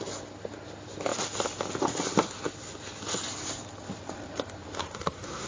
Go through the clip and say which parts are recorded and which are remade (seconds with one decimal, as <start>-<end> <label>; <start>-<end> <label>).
0.0-4.8 recorded; 4.8-5.5 remade